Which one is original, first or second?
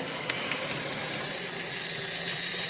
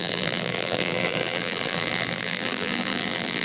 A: first